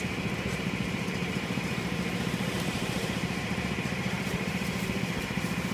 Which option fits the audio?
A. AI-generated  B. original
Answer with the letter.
A